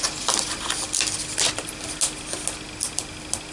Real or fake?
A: real